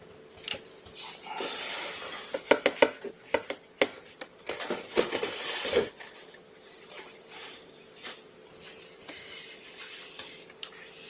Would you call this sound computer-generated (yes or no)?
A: no